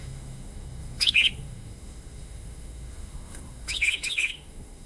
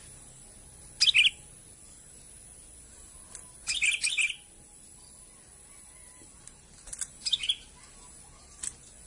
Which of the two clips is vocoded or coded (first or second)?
first